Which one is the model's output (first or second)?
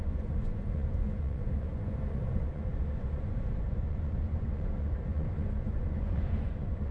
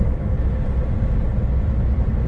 first